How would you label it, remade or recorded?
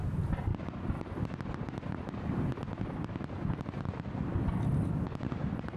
recorded